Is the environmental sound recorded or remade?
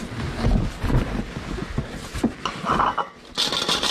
recorded